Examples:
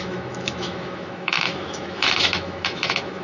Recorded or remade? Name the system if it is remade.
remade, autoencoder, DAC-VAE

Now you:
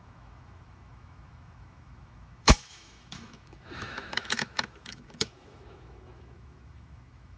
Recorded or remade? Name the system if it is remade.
remade, autoencoder, DAC-VAE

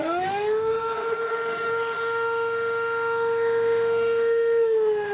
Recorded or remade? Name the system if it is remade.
remade, autoencoder, DAC-VAE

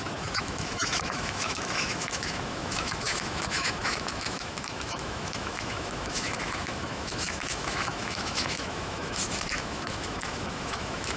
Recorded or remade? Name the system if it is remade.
remade, autoencoder, DAC-VAE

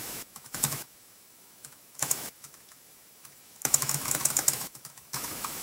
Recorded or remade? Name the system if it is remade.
remade, autoencoder, DAC-VAE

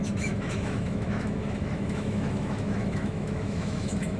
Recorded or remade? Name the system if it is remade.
remade, autoencoder, DAC-VAE